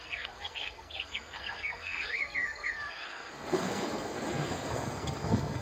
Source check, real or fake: fake